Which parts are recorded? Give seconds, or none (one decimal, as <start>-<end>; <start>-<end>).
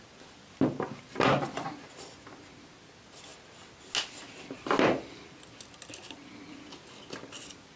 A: 0.0-7.8